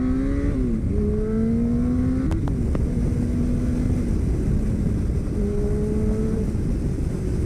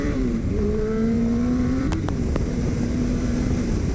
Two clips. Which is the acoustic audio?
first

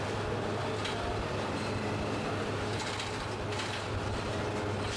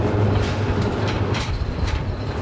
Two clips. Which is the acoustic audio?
first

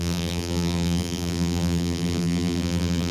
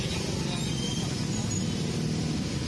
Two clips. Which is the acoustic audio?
second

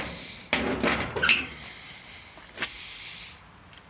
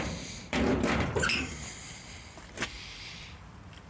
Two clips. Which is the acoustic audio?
first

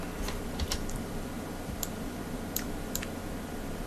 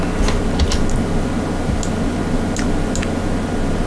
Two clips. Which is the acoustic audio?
second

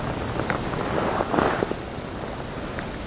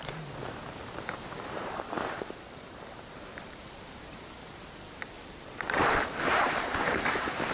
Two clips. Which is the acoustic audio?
first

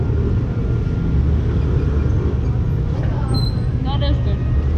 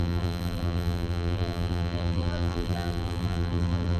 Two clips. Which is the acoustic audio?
first